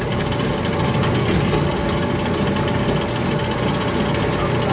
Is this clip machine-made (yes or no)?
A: no